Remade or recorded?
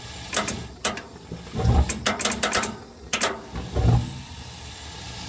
recorded